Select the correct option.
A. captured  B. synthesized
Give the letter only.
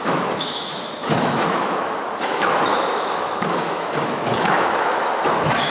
B